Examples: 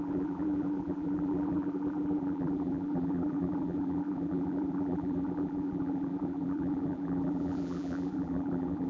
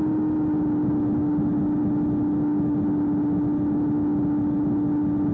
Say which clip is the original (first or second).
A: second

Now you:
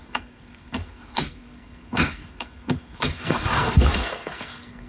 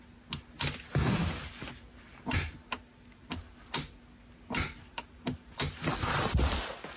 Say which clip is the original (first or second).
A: second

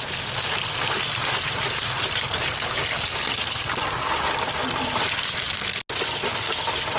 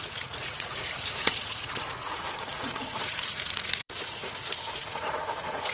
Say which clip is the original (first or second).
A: first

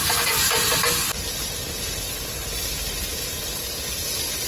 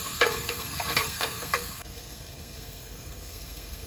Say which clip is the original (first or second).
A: first